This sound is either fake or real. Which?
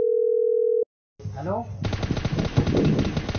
real